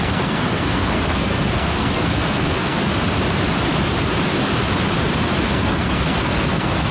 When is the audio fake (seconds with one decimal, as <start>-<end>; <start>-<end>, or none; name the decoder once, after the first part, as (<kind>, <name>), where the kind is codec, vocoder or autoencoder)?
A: 0.0-2.9 (codec, SNAC); 5.4-6.9